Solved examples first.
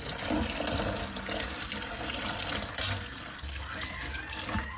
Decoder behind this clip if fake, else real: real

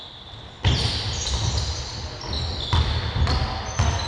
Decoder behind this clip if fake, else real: real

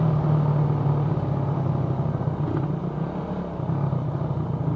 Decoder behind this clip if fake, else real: real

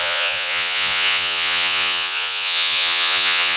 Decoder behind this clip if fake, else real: fake, vocoder, Vocos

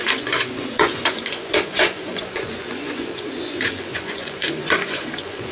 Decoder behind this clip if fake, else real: fake, vocoder, Vocos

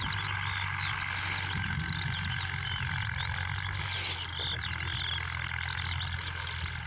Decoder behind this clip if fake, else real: real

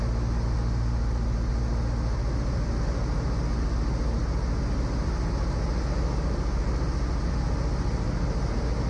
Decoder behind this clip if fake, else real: real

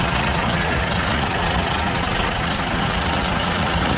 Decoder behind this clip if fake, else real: fake, vocoder, Vocos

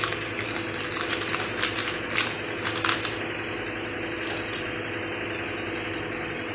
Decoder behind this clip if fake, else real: real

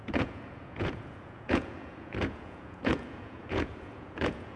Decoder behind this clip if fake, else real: fake, vocoder, Vocos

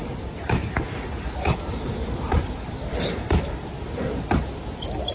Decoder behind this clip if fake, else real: real